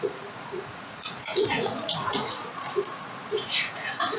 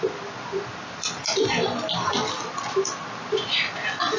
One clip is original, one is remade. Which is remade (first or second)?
first